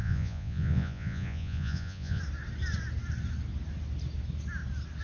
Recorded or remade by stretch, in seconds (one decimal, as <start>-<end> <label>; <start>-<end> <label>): 0.0-2.2 remade; 2.2-5.0 recorded